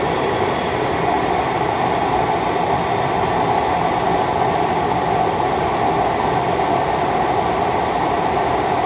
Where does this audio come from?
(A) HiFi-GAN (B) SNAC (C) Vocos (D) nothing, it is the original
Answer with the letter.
D